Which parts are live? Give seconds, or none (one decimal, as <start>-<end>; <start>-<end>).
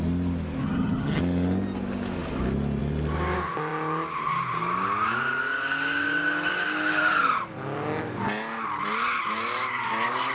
0.0-0.6; 1.2-10.3